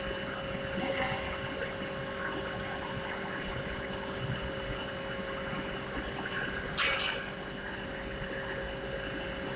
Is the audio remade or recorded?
recorded